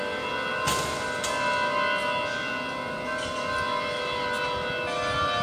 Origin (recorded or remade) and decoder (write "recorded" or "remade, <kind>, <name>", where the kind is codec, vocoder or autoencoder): recorded